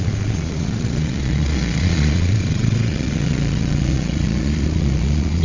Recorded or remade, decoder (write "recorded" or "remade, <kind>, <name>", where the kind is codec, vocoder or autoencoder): remade, vocoder, Vocos